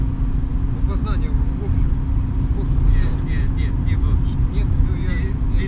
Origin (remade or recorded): recorded